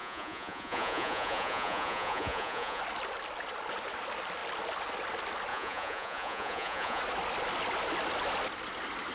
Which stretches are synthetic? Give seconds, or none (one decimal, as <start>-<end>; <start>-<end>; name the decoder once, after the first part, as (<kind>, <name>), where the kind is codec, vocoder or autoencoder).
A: 0.0-2.8 (vocoder, Vocos); 5.5-7.0